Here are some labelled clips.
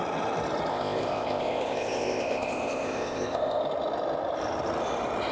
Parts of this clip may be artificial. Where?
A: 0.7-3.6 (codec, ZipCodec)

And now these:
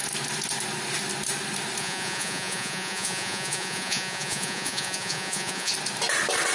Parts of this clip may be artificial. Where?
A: 1.8-5.7 (vocoder, Vocos)

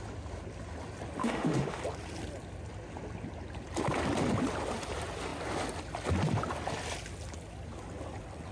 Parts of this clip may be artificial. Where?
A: 1.2-1.8 (autoencoder, DAC-VAE)

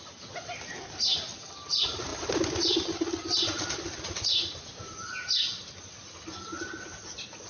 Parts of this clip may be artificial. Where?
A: none

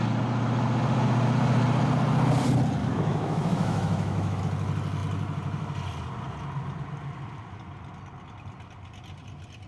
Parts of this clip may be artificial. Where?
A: 2.8-4.4 (autoencoder, DAC-VAE)

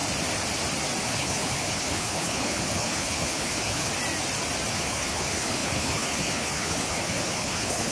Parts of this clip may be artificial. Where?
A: 1.0-3.9 (codec, HILCodec); 4.7-7.9

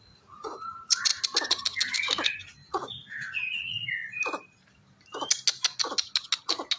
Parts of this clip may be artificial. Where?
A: 0.0-1.1 (vocoder, Vocos); 2.7-4.0

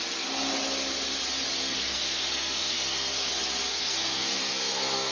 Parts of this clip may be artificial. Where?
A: 1.6-3.3 (codec, SNAC); 3.7-5.1